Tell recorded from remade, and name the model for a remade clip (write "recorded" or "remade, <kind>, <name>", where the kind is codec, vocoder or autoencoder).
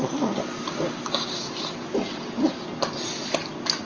recorded